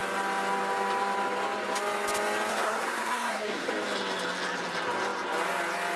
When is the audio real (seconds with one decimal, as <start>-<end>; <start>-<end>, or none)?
0.0-2.5; 3.7-6.0